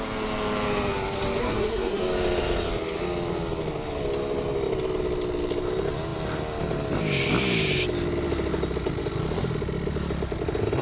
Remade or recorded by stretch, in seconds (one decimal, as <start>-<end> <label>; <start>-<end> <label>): 0.0-1.4 recorded; 1.4-2.0 remade; 2.0-10.8 recorded